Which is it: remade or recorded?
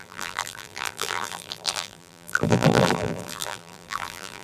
remade